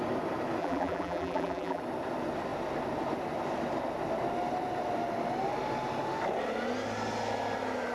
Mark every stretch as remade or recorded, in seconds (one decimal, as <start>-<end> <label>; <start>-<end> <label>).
0.0-0.6 recorded; 0.6-1.8 remade; 1.8-7.9 recorded